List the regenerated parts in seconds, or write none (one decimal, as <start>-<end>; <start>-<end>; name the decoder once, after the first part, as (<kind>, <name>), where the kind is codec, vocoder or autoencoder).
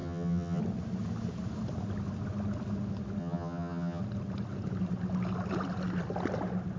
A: 0.0-0.6 (vocoder, HiFi-GAN); 3.2-4.0